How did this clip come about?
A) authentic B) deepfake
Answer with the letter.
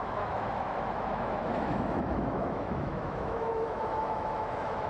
B